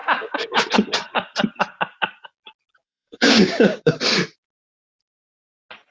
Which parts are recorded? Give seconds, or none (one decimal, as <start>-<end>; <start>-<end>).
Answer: 0.7-2.8; 4.0-5.9

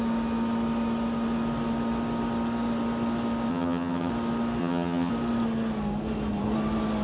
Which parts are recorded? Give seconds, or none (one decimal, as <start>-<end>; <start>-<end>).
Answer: 0.0-3.5; 4.1-4.6; 5.1-7.0

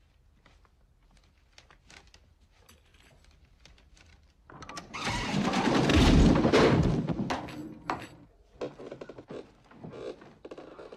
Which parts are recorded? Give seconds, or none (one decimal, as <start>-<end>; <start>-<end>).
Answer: 0.0-2.9; 5.3-7.6; 8.6-11.0

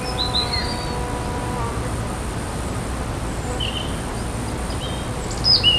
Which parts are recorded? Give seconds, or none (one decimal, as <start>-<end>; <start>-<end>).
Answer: 0.0-5.8

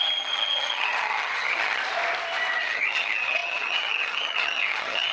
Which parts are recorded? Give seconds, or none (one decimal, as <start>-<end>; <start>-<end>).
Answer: 1.8-2.6

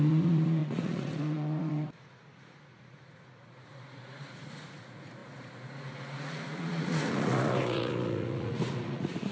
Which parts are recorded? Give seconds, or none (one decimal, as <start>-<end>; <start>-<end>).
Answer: none

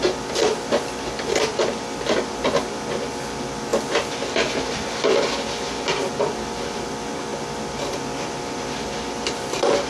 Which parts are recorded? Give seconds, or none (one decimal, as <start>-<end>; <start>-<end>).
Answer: 0.0-9.9

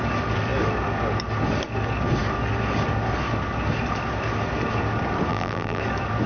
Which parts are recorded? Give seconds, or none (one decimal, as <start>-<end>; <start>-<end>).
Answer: 0.0-5.3; 5.8-6.3